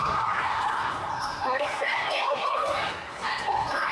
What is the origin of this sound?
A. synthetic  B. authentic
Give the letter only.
A